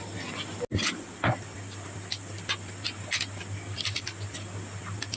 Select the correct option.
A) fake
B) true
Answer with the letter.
B